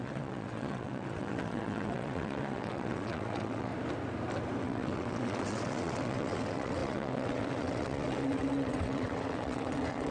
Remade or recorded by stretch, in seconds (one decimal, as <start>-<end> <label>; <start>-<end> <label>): 0.0-3.7 remade; 3.7-4.6 recorded; 4.6-10.1 remade